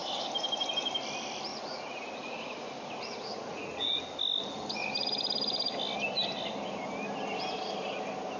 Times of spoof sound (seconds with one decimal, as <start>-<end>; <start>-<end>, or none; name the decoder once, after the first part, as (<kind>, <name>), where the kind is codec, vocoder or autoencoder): 1.5-4.0 (vocoder, Vocos)

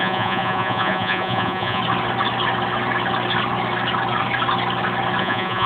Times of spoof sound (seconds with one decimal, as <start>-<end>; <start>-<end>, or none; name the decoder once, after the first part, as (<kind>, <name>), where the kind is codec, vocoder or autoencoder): 0.0-1.8 (vocoder, Vocos); 5.2-5.7

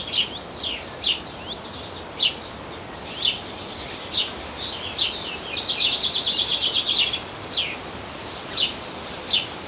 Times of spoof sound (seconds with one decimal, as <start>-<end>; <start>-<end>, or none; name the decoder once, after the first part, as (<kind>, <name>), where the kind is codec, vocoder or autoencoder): none

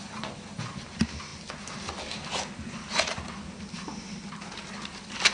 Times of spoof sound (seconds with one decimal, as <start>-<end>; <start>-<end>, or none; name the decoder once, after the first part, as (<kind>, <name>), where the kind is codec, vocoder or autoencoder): none

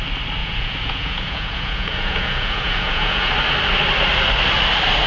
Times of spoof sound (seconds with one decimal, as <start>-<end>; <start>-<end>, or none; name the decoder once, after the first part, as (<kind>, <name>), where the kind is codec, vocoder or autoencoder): 0.4-3.3 (vocoder, Vocos)

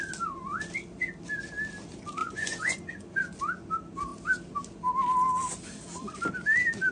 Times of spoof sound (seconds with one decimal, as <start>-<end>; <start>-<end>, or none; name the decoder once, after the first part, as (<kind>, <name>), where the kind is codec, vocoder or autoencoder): 2.2-3.4 (vocoder, Vocos)

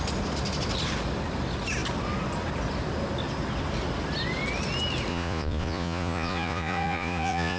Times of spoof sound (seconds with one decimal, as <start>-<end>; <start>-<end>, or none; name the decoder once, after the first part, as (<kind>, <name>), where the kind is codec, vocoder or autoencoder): 5.1-7.6 (vocoder, Vocos)